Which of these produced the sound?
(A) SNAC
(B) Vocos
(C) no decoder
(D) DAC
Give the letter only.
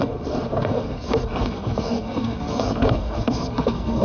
A